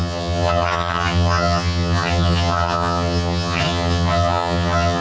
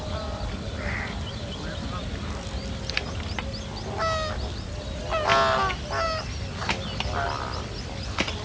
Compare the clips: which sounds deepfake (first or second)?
first